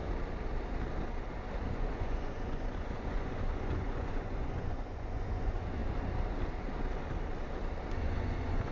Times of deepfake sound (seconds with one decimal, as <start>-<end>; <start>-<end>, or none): 1.7-5.8; 7.9-8.7